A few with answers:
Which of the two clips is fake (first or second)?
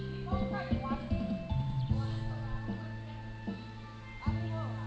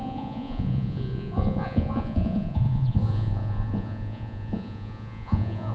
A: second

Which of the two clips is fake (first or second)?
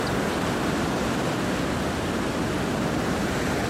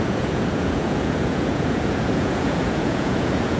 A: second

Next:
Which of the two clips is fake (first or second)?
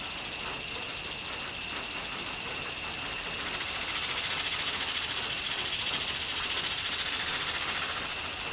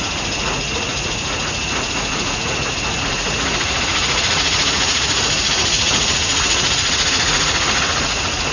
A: second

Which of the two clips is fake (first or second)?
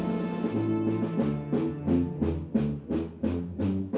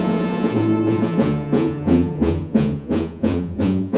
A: second